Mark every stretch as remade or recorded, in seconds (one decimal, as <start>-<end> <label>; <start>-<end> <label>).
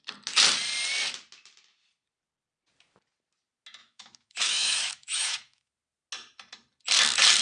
0.0-3.8 recorded; 3.8-5.7 remade; 5.7-7.4 recorded